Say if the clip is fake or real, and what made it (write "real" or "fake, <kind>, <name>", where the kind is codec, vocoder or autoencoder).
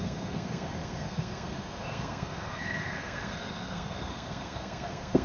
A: fake, codec, SNAC